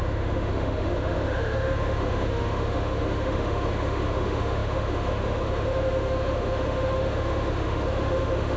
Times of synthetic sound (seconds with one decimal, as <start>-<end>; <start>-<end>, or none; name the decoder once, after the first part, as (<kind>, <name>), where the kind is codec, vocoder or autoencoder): 0.0-8.6 (autoencoder, DAC-VAE)